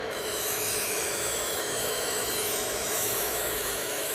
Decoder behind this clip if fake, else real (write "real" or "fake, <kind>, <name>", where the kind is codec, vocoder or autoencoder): fake, autoencoder, DAC-VAE